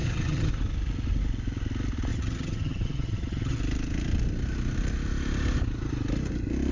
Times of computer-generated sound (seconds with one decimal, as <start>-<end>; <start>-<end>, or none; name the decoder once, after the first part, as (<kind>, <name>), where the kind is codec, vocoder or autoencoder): 0.0-0.5 (vocoder, HiFi-GAN); 2.1-3.6